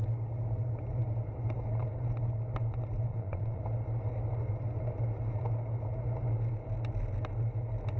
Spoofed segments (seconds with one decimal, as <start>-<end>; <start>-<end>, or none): 3.1-3.6